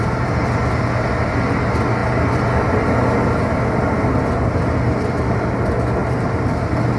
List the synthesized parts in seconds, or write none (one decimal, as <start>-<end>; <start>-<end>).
6.0-6.6